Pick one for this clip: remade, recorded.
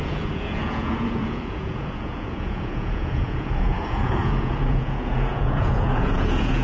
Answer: remade